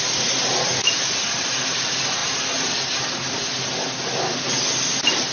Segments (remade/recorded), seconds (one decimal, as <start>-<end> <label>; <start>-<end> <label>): 0.0-5.3 recorded